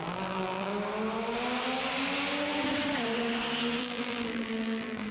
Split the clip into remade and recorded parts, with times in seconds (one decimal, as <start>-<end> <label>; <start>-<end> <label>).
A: 0.0-0.7 remade; 0.7-3.8 recorded; 3.8-5.1 remade